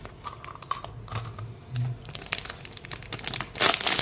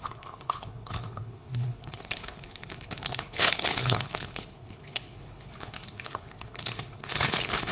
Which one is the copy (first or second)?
second